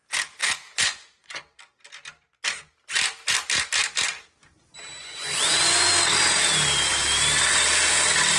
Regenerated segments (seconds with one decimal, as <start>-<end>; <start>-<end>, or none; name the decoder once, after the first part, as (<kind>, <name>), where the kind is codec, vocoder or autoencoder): 0.4-1.4 (vocoder, Vocos); 5.0-5.9